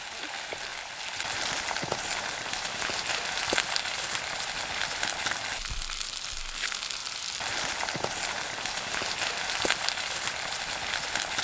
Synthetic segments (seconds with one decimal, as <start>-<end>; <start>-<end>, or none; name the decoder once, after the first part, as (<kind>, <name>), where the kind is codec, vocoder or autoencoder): none